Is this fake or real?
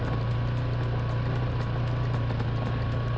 real